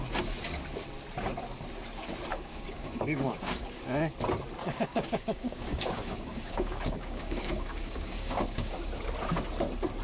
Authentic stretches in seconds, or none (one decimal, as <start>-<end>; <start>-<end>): 0.0-2.3; 3.8-4.6; 8.7-10.0